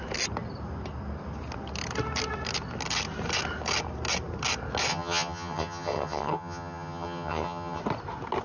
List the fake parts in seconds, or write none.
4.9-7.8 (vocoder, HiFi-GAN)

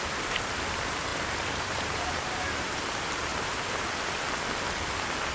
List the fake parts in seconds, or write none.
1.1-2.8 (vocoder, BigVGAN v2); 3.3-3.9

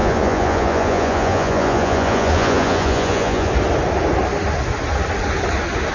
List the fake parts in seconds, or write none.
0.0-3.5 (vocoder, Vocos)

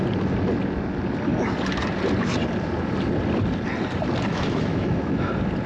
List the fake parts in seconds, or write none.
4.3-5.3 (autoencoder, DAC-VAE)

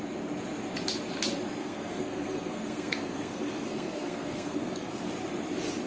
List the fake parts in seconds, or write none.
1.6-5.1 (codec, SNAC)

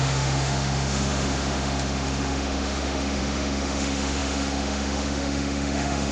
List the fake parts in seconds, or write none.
0.0-6.1 (autoencoder, DAC-VAE)